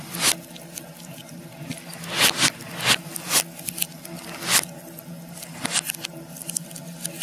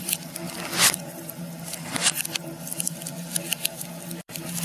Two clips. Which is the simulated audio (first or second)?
second